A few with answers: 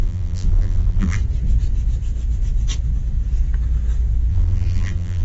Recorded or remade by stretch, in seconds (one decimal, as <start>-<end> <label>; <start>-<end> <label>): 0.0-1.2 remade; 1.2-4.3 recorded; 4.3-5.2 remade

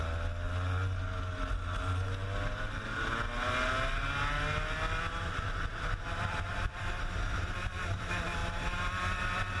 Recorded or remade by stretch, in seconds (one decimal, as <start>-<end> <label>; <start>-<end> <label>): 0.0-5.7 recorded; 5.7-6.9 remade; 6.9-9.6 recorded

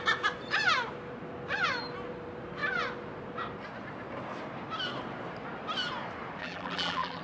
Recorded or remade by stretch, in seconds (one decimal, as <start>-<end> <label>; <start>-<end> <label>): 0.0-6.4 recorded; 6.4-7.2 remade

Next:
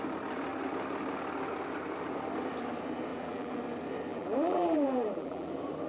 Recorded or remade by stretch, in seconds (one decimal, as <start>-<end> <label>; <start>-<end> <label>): 0.0-3.1 recorded; 3.1-3.6 remade; 3.6-4.1 recorded; 4.1-5.5 remade; 5.5-5.9 recorded